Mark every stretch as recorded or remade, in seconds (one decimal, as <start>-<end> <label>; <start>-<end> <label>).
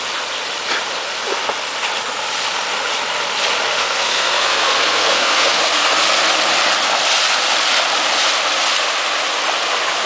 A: 0.0-3.8 recorded; 3.8-5.6 remade; 5.6-10.1 recorded